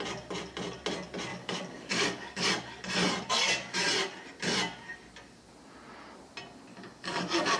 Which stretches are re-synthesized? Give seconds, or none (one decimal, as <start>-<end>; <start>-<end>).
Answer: 1.3-2.5; 6.7-7.6